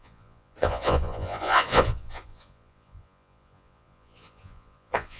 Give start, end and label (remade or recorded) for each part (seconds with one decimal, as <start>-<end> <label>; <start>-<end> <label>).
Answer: 0.0-5.2 remade